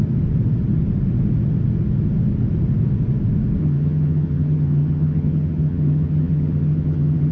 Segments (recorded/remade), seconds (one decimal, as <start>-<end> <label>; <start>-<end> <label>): 0.0-3.6 recorded; 3.6-7.3 remade

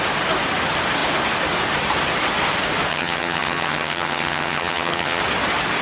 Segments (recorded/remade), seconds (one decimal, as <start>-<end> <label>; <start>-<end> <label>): 0.0-2.9 recorded; 2.9-5.2 remade; 5.2-5.8 recorded